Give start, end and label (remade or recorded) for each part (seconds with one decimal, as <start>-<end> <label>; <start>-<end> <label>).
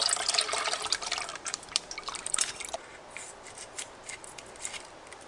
0.0-5.3 recorded